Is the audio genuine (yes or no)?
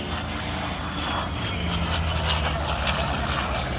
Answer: yes